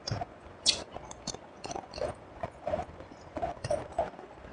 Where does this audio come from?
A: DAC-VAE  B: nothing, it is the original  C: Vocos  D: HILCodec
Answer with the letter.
C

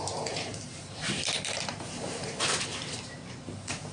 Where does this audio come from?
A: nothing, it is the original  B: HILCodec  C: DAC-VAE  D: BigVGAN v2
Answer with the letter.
D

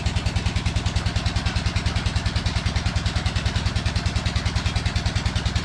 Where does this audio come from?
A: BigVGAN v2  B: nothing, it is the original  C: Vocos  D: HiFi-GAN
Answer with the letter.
B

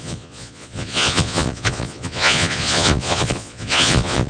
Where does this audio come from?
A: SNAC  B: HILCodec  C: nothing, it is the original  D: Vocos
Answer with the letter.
D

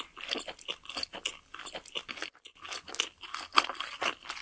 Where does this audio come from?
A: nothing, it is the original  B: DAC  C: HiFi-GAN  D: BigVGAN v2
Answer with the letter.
A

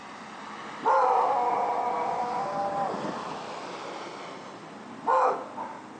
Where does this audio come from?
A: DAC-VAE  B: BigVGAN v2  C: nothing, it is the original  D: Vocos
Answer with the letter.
C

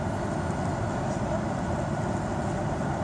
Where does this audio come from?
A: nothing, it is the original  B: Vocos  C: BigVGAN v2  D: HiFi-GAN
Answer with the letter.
A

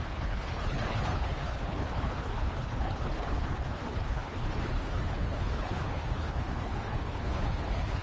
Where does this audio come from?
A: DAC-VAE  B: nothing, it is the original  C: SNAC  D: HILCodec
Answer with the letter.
D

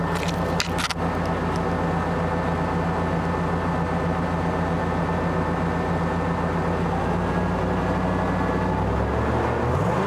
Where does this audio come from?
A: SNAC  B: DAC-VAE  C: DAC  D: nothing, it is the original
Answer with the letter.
D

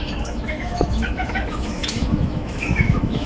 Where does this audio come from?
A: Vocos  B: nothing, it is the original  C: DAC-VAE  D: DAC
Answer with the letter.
C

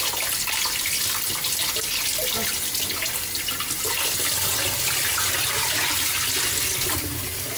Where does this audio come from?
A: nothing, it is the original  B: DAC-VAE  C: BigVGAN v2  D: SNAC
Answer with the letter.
A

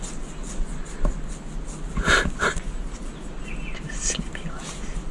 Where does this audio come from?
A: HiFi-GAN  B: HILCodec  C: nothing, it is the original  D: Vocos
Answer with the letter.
C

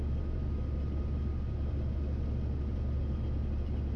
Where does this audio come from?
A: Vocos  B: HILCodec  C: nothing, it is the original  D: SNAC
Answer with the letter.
C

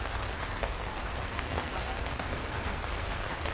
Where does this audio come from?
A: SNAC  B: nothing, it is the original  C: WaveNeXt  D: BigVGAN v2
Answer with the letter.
A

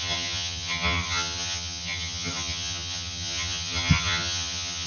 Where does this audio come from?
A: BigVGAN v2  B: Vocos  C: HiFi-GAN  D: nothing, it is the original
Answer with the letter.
C